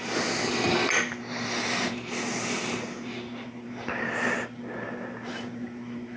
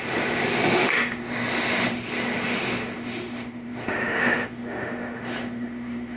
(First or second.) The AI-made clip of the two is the second